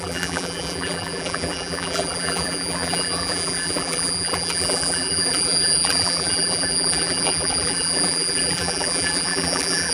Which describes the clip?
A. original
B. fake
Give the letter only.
B